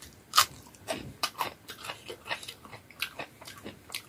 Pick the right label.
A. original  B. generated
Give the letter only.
B